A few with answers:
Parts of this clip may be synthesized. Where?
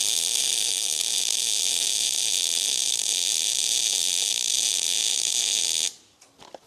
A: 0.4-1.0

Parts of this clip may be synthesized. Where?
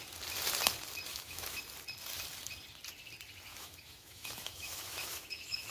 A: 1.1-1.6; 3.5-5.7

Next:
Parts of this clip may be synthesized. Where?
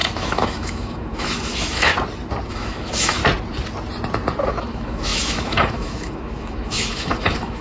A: 0.0-1.9; 2.5-3.2; 4.6-7.6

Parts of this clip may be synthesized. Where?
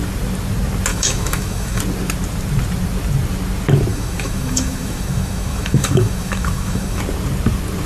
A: 0.9-1.8; 3.9-7.0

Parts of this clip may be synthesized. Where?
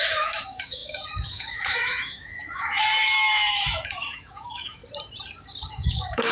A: 0.0-4.8; 5.7-6.3